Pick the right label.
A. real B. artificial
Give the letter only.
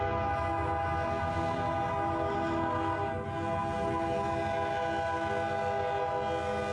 A